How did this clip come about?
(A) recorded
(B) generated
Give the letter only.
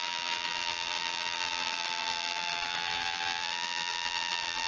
B